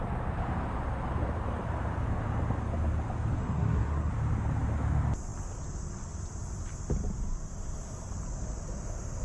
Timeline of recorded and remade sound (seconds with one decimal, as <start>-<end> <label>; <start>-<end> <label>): 0.0-3.4 recorded; 3.4-4.1 remade; 4.1-9.2 recorded